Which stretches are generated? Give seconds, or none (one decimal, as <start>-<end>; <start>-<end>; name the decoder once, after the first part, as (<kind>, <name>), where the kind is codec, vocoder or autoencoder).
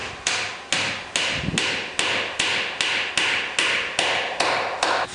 none